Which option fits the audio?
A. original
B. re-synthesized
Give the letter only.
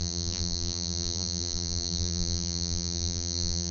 B